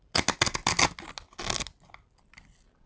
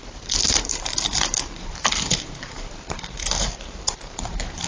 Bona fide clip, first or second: first